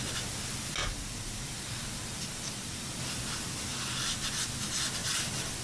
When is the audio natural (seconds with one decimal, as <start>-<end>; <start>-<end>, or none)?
0.0-0.8; 3.0-3.7; 4.3-5.0